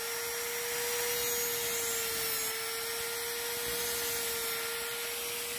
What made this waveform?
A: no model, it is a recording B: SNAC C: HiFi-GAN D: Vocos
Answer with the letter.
A